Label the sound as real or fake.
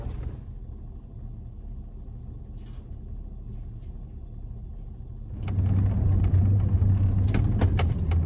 real